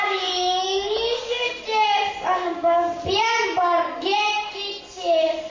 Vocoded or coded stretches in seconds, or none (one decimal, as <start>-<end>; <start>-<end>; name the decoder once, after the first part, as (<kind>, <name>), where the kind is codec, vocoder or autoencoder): 0.0-1.5 (codec, DAC); 2.5-3.0